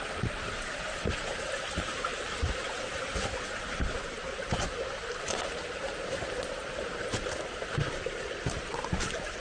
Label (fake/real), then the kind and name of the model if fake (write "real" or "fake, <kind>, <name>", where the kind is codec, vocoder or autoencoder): real